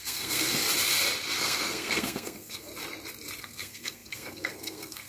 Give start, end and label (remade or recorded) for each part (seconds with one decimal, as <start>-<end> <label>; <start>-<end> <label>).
0.0-0.5 remade; 0.5-1.4 recorded; 1.4-2.7 remade; 2.7-3.4 recorded; 3.4-5.1 remade